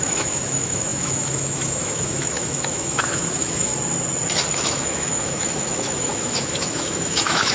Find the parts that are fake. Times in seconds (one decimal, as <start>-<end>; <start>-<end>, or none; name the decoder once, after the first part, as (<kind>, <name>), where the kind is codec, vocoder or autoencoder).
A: 0.0-3.7 (autoencoder, DAC-VAE); 4.5-7.5